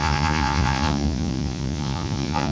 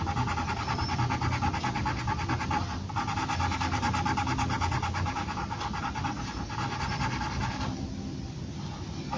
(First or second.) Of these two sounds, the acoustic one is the second